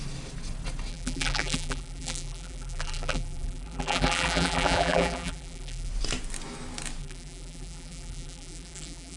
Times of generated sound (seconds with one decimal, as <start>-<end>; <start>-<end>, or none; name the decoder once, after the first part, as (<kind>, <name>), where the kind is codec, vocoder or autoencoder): 0.9-5.9 (vocoder, BigVGAN v2); 7.0-9.2